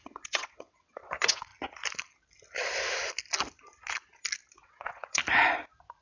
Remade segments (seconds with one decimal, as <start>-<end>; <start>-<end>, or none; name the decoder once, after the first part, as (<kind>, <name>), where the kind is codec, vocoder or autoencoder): 0.0-1.5 (vocoder, WaveNeXt); 4.5-5.2